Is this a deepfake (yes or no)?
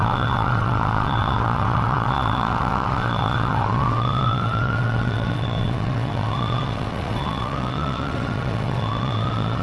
yes